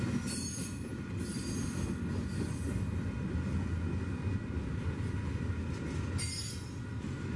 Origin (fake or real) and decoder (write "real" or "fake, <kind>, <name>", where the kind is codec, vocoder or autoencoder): real